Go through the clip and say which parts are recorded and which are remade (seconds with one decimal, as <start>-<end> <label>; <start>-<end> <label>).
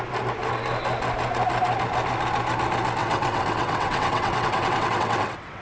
0.0-3.0 recorded; 3.0-5.6 remade